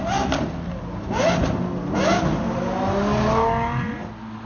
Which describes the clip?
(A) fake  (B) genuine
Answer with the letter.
B